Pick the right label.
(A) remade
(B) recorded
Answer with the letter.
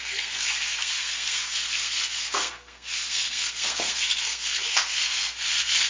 A